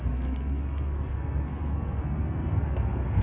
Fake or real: fake